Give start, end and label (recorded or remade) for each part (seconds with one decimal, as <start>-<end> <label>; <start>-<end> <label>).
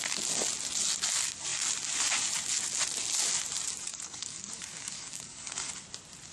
0.0-3.9 recorded; 3.9-5.7 remade; 5.7-6.3 recorded